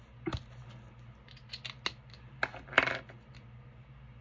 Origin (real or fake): real